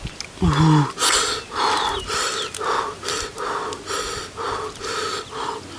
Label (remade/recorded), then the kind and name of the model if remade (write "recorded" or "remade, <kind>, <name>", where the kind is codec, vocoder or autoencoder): recorded